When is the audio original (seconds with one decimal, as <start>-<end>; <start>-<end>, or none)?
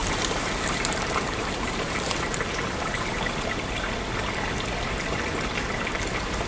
3.9-6.5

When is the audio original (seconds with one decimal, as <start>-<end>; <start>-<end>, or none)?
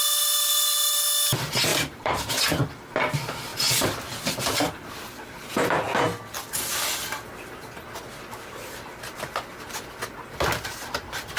0.0-1.7; 2.3-3.5; 4.4-11.4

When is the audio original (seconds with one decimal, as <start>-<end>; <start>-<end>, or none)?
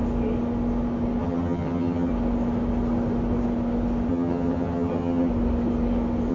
0.0-1.2; 2.1-4.1; 5.3-6.3